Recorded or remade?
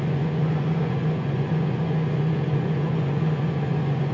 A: remade